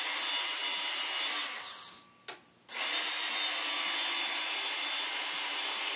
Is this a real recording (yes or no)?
yes